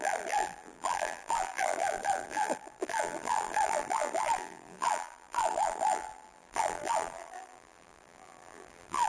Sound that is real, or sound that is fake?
fake